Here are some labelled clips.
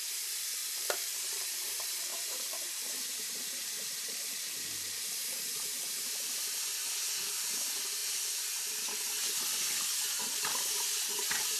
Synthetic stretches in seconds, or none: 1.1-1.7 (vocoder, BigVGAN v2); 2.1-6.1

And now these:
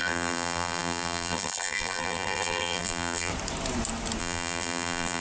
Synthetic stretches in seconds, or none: 0.0-3.3 (vocoder, BigVGAN v2); 4.2-5.2

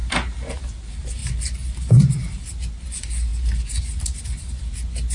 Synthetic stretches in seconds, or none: 1.2-2.4 (vocoder, BigVGAN v2)

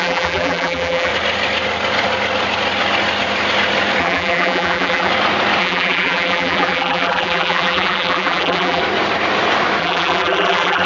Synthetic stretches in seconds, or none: 0.0-1.1 (vocoder, BigVGAN v2); 4.0-5.1; 5.6-8.8; 9.8-10.9

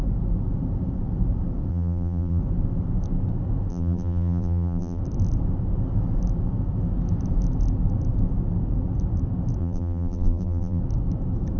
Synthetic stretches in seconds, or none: 1.7-2.4 (vocoder, BigVGAN v2); 3.7-5.0; 9.6-10.8

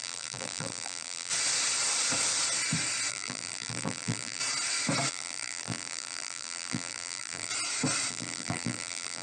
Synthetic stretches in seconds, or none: 0.0-1.3 (vocoder, BigVGAN v2); 3.1-4.4; 5.1-7.5; 8.1-9.2

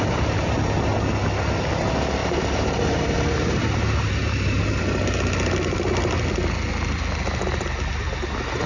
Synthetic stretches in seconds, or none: 2.2-4.8 (vocoder, BigVGAN v2)